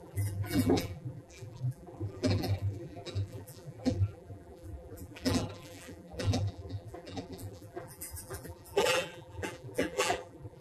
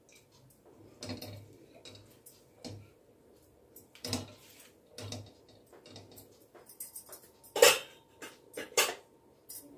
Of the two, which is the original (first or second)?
second